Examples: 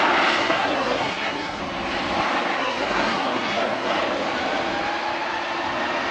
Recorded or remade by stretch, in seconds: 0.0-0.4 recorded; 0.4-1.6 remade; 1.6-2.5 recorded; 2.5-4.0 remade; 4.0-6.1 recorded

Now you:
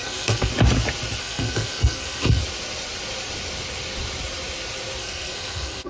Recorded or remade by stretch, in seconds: 0.0-0.5 remade; 0.5-1.2 recorded; 1.2-2.4 remade; 2.4-5.0 recorded; 5.0-5.9 remade

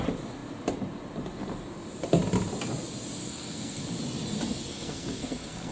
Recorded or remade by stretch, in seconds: 0.0-3.2 recorded; 3.2-3.8 remade; 3.8-4.7 recorded; 4.7-5.7 remade

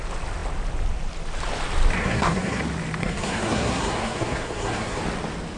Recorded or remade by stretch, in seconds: 0.0-2.0 recorded; 2.0-2.6 remade; 2.6-3.0 recorded; 3.0-5.0 remade; 5.0-5.6 recorded